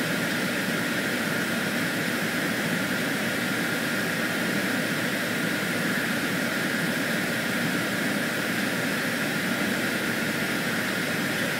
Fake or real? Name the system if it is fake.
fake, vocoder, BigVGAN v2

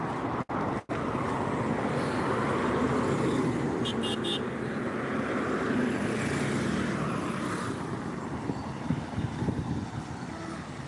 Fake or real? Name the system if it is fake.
real